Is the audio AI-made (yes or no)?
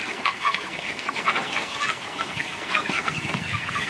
yes